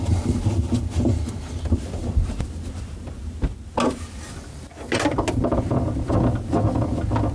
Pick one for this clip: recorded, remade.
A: recorded